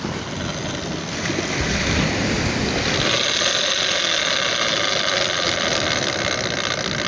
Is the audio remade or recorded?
recorded